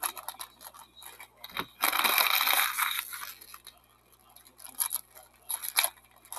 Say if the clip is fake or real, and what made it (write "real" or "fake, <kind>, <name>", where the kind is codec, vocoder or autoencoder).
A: real